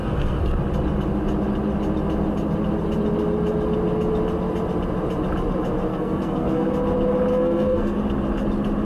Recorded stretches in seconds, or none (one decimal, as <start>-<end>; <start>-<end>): 0.6-5.9; 6.7-7.3; 8.0-8.8